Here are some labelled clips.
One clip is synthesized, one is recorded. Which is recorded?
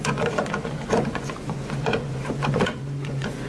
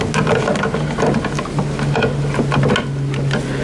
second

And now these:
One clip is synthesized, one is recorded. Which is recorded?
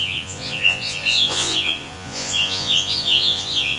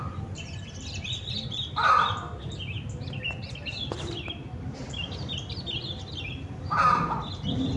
second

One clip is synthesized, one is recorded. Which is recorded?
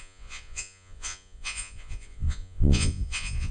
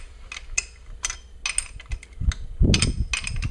second